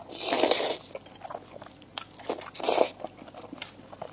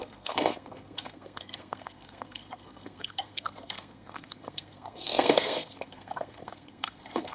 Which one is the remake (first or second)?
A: second